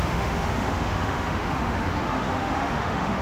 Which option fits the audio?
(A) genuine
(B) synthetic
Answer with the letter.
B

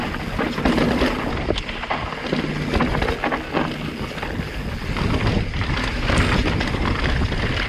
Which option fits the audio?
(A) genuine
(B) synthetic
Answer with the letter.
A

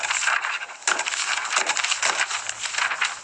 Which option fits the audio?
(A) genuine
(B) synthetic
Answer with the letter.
A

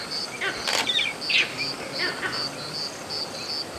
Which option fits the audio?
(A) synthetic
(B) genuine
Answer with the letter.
B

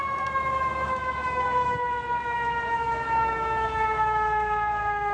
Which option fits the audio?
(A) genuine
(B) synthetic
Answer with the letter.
B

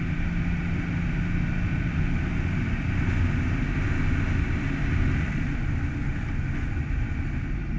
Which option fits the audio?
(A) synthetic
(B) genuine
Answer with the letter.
B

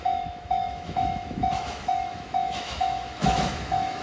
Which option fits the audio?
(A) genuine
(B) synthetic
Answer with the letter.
B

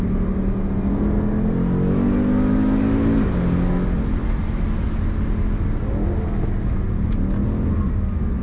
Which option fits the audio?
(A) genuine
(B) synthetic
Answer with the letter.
A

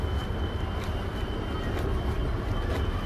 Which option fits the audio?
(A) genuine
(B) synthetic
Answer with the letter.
A